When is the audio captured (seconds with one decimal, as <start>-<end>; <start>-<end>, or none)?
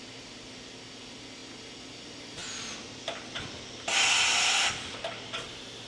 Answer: 0.0-5.9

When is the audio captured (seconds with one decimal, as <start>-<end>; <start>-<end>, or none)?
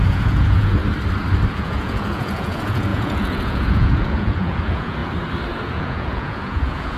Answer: 0.8-1.5; 5.0-5.7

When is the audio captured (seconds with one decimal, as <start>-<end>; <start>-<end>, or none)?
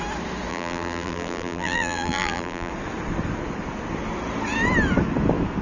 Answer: 0.0-0.5; 2.7-5.6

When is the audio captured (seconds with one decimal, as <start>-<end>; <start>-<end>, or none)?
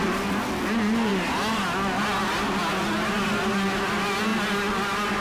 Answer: 0.0-5.2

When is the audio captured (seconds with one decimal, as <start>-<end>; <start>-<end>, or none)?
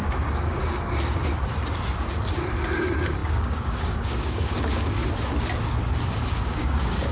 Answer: 0.6-2.8; 5.0-6.3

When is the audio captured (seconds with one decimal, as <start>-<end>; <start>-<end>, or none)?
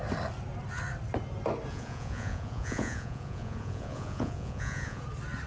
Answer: 0.0-1.7; 5.0-5.5